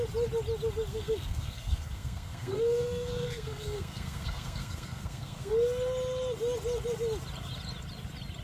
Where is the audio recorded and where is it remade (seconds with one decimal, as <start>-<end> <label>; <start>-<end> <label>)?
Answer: 0.0-0.9 recorded; 0.9-5.5 remade; 5.5-8.4 recorded

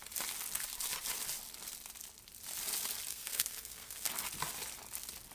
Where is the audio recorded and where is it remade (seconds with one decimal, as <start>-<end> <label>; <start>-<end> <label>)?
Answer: 0.0-3.1 recorded; 3.1-4.1 remade; 4.1-5.3 recorded

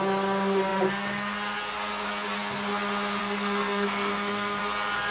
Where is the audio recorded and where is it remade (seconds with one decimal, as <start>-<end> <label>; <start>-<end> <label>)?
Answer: 0.0-3.2 recorded; 3.2-4.6 remade; 4.6-5.1 recorded

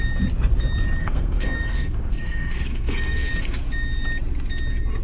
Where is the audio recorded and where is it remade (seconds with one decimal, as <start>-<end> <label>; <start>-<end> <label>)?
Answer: 0.0-1.0 recorded; 1.0-3.3 remade; 3.3-5.0 recorded

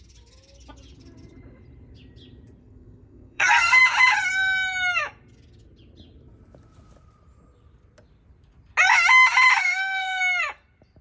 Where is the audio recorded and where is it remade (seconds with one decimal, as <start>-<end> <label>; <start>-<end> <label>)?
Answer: 0.0-2.6 recorded; 2.6-3.8 remade; 3.8-9.6 recorded; 9.6-10.2 remade; 10.2-11.0 recorded